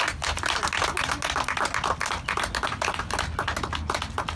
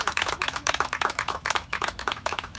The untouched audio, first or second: first